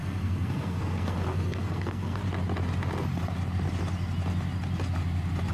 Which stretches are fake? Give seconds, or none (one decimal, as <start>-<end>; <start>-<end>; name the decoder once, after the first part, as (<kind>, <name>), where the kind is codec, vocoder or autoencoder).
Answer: 0.0-2.2 (codec, SNAC)